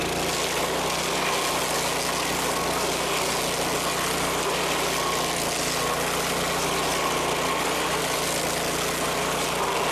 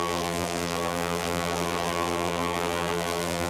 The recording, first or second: first